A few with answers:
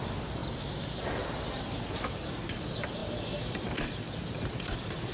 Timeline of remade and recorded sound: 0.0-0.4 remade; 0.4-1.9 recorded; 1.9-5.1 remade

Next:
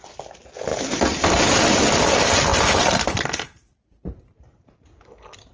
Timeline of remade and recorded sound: 0.0-0.7 recorded; 0.7-1.4 remade; 1.4-2.5 recorded; 2.5-4.7 remade; 4.7-5.5 recorded

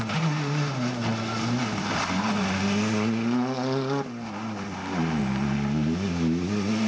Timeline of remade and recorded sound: 0.0-6.9 recorded

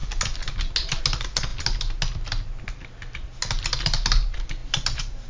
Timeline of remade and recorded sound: 0.0-4.6 recorded; 4.6-5.3 remade

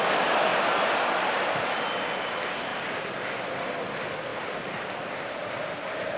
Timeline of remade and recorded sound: 0.0-2.7 recorded; 2.7-3.5 remade; 3.5-6.2 recorded

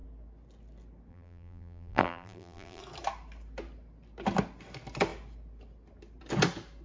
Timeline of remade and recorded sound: 0.0-1.1 recorded; 1.1-2.8 remade; 2.8-6.8 recorded

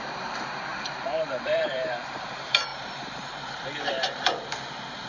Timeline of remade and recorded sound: 0.0-5.1 remade